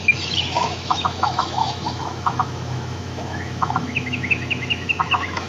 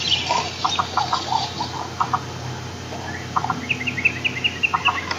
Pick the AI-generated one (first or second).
first